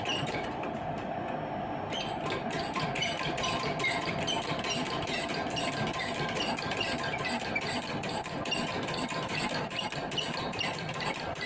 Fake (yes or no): yes